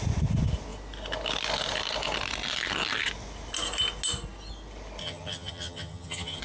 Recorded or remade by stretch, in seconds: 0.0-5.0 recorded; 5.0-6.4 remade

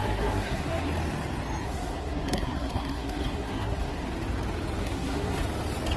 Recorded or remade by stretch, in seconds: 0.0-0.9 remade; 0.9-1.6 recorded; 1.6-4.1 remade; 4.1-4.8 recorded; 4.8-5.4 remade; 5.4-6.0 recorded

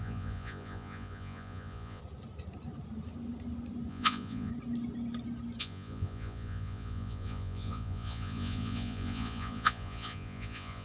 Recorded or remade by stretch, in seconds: 0.0-2.0 remade; 2.0-3.9 recorded; 3.9-4.5 remade; 4.5-5.6 recorded; 5.6-10.8 remade

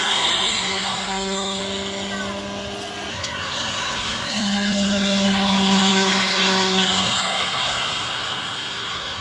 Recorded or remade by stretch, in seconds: 0.0-1.6 remade; 1.6-3.1 recorded; 3.1-9.2 remade